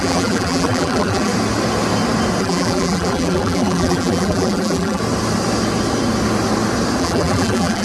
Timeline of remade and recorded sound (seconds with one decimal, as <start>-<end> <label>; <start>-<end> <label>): 0.0-1.3 remade; 1.3-2.4 recorded; 2.4-5.0 remade; 5.0-7.0 recorded; 7.0-7.8 remade